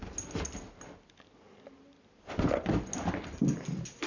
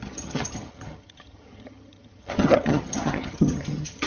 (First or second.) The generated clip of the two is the second